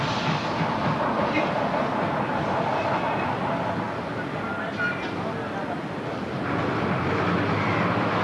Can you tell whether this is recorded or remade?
recorded